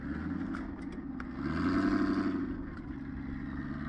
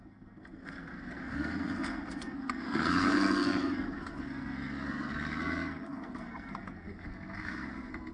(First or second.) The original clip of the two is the first